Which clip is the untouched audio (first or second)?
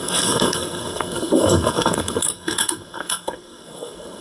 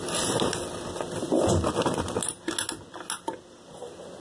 second